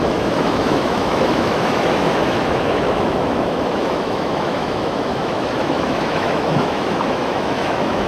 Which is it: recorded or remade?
remade